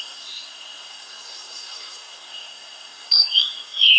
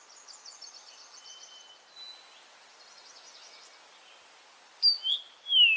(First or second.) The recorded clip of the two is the second